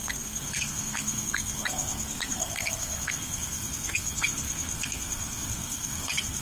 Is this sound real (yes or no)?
no